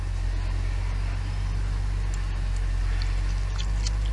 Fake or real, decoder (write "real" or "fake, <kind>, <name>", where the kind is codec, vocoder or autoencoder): real